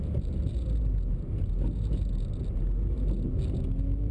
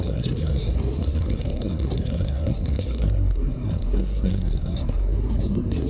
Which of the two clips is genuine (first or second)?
first